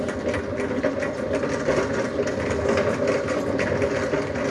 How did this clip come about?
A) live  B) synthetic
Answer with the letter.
A